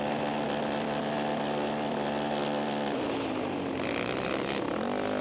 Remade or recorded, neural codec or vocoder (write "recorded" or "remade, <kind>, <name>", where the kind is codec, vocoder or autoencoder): recorded